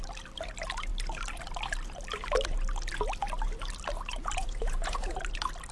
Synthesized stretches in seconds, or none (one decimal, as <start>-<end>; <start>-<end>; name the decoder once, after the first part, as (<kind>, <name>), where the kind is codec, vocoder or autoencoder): 4.4-5.2 (vocoder, Vocos)